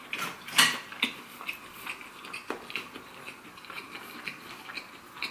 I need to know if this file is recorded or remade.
recorded